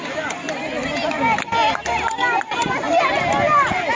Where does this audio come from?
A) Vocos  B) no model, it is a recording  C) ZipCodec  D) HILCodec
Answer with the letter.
B